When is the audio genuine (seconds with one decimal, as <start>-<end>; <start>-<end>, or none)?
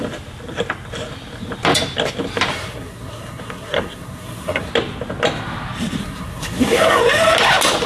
0.0-2.5; 4.7-6.0; 7.0-7.9